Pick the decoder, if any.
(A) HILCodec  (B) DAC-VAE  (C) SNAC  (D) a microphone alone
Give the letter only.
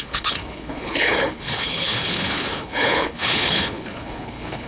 A